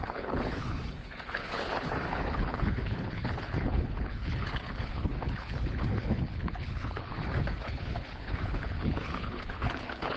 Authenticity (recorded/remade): remade